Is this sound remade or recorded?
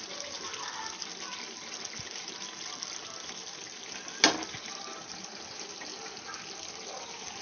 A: recorded